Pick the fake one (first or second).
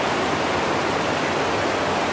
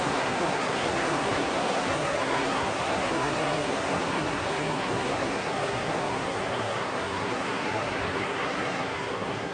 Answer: second